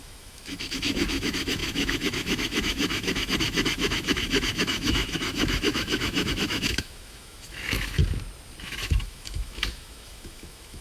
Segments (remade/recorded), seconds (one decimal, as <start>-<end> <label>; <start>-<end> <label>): 0.0-8.0 remade; 8.0-8.6 recorded; 8.6-10.8 remade